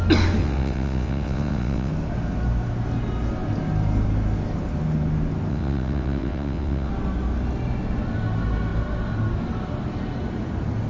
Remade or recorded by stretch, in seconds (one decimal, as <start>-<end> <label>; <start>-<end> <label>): 0.0-0.4 recorded; 0.4-1.9 remade; 1.9-5.5 recorded; 5.5-6.9 remade; 6.9-10.9 recorded